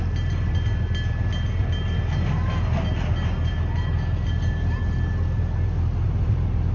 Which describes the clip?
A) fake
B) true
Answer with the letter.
B